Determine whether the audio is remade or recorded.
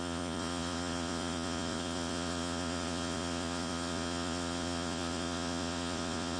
remade